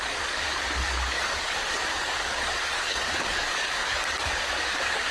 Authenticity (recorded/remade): remade